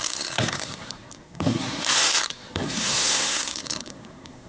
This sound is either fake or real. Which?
fake